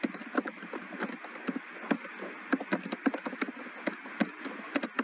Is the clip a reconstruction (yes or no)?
no